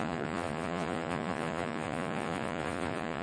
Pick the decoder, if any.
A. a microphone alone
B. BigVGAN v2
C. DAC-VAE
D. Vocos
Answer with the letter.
D